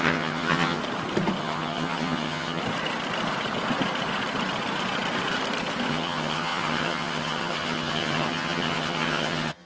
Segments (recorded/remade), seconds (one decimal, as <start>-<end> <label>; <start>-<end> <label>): 0.0-0.8 remade; 0.8-1.4 recorded; 1.4-2.6 remade; 2.6-5.9 recorded; 5.9-9.7 remade